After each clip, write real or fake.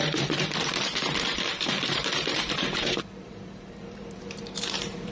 fake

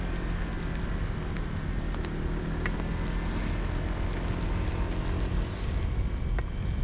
real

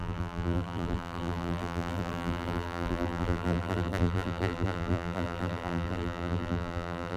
fake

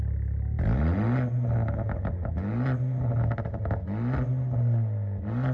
real